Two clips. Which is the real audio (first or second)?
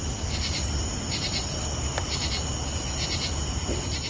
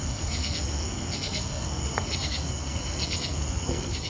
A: first